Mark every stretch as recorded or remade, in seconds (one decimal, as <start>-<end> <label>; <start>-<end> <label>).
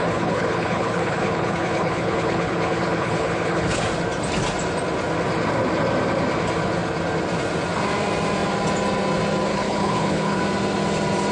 0.0-3.8 remade; 3.8-9.5 recorded; 9.5-10.4 remade; 10.4-11.3 recorded